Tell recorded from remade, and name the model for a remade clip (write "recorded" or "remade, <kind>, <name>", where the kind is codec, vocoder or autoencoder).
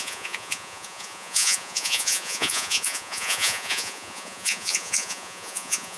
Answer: remade, vocoder, Vocos